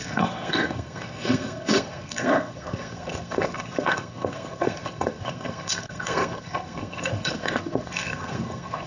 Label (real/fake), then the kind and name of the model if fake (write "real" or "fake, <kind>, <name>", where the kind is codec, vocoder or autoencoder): fake, codec, SNAC